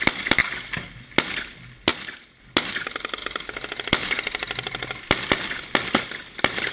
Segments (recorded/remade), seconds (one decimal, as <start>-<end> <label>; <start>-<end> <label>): 0.0-6.7 recorded